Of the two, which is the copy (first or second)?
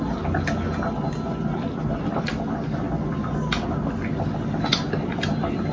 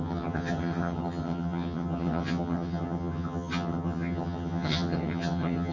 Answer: second